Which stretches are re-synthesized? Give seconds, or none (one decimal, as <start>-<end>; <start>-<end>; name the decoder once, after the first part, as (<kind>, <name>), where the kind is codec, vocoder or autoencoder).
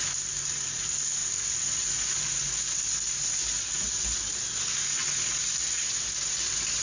none